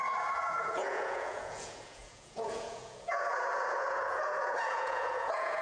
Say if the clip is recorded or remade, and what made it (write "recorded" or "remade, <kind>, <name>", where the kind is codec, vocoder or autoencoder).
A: remade, vocoder, Vocos